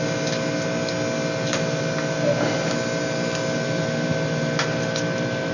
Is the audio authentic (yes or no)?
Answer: yes